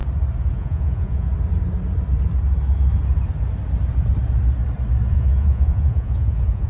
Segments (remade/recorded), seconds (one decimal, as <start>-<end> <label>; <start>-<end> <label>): 0.0-0.5 recorded; 0.5-1.3 remade; 1.3-5.1 recorded; 5.1-6.7 remade